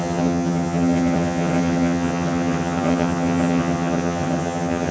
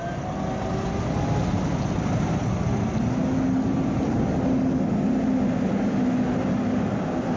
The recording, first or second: second